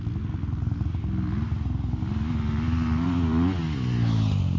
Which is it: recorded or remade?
recorded